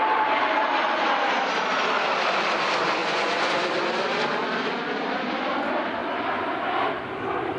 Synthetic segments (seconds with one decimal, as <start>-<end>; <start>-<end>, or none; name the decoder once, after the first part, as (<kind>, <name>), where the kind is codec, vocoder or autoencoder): 3.0-3.5 (vocoder, Vocos)